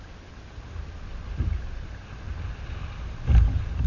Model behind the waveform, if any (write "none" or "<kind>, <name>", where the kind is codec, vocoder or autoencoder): none